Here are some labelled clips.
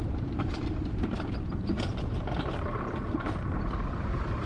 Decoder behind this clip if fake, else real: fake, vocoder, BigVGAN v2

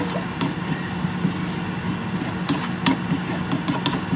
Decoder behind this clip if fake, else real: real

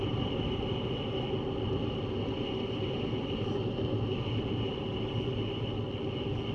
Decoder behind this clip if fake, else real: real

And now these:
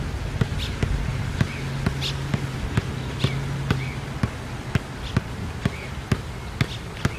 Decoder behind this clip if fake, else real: real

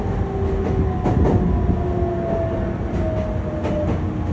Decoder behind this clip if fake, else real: real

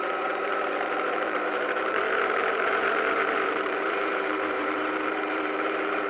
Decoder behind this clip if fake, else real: fake, vocoder, BigVGAN v2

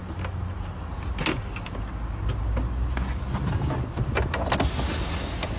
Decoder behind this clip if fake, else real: real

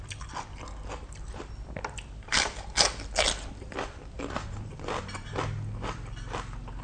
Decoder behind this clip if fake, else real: real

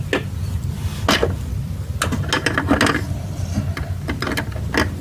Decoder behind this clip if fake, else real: real